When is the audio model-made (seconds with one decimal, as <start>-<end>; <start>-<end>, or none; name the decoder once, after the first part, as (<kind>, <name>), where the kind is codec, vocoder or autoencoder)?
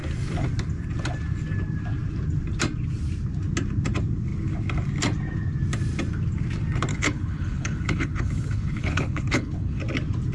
6.9-9.8 (codec, HILCodec)